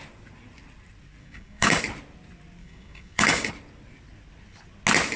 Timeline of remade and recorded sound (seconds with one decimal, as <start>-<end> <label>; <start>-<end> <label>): 0.0-1.2 recorded; 1.2-1.8 remade; 1.8-2.6 recorded; 2.6-3.5 remade; 3.5-5.2 recorded